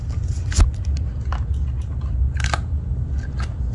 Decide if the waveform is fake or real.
real